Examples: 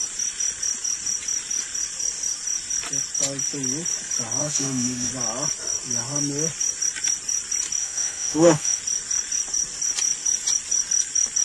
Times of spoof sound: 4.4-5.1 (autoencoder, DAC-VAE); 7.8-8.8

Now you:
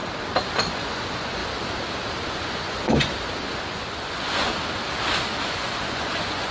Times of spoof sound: 0.7-1.4 (vocoder, Vocos); 2.3-3.1; 3.7-4.5; 5.4-6.5

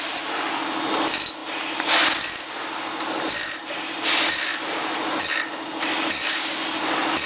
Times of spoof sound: none

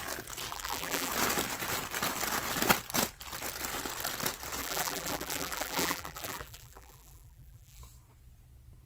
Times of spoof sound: 0.5-1.1 (vocoder, BigVGAN v2); 4.6-7.8

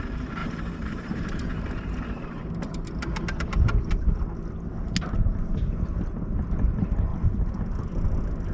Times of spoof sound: 0.4-1.5 (vocoder, BigVGAN v2); 7.1-8.0